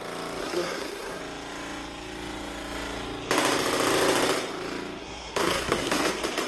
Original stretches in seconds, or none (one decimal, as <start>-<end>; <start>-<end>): 0.0-0.4; 1.2-5.0; 6.1-6.5